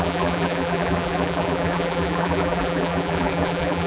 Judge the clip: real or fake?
fake